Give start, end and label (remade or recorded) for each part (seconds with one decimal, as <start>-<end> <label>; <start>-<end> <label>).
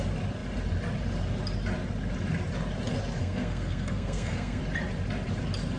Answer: 0.0-3.2 recorded; 3.2-4.6 remade; 4.6-5.8 recorded